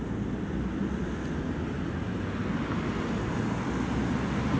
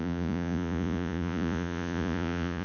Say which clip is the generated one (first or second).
second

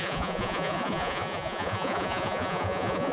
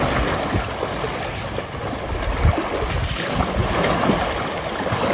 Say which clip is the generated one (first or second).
first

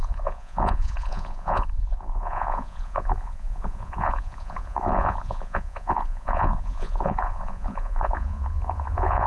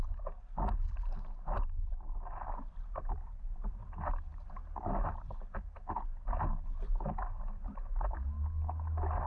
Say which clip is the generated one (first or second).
first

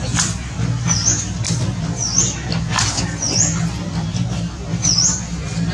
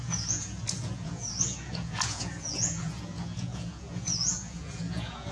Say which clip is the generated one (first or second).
second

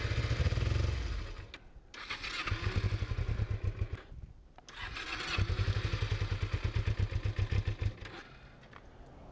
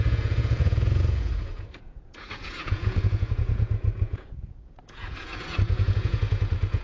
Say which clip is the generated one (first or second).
second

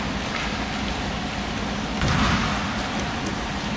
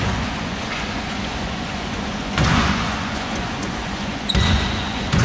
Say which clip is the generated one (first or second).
second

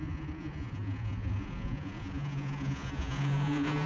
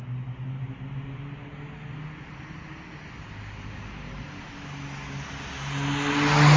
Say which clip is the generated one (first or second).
first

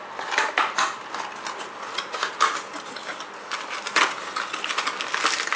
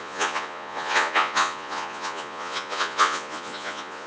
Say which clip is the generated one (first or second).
second